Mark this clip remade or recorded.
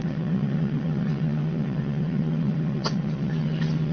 remade